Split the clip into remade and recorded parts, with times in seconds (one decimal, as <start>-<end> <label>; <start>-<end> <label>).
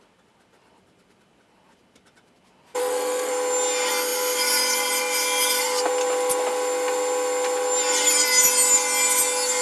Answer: 0.0-2.8 recorded; 2.8-3.3 remade; 3.3-9.6 recorded